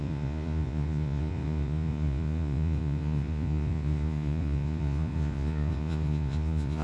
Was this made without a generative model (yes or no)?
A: no